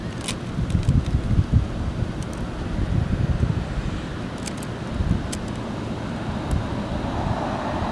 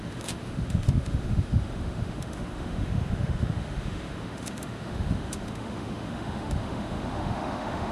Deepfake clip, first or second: second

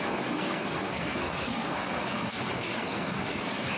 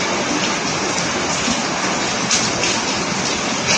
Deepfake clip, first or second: first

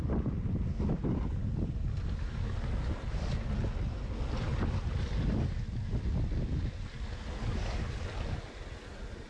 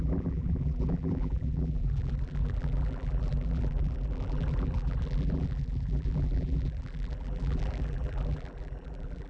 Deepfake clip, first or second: second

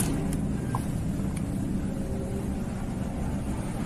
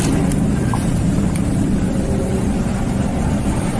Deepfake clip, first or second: second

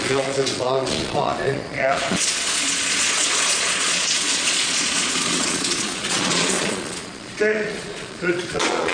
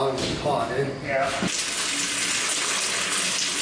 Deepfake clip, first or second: first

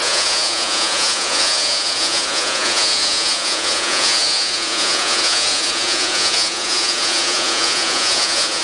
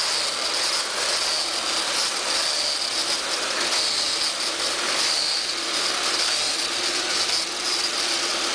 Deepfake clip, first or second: first